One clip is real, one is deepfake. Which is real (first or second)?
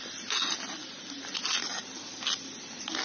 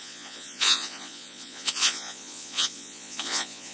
first